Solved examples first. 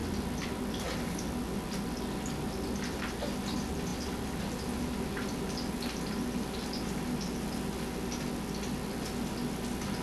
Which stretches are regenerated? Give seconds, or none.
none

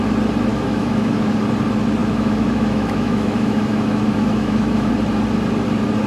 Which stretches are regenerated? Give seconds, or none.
0.5-1.3 (autoencoder, DAC-VAE); 2.0-4.9

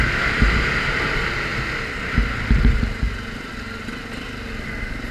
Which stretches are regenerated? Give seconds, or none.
none